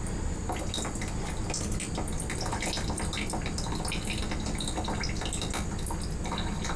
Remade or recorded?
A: recorded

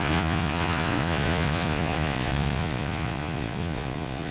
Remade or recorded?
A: remade